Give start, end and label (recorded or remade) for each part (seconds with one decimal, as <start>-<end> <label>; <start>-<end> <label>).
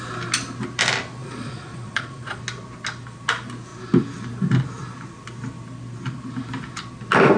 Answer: 0.0-1.2 recorded; 1.2-2.4 remade; 2.4-7.4 recorded